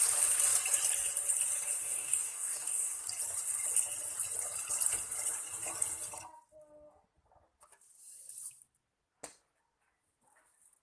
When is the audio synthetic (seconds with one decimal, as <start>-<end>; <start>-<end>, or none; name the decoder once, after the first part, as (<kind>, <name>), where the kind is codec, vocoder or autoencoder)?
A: 1.8-3.0 (codec, DAC)